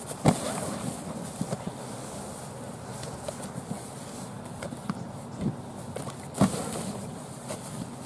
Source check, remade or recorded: recorded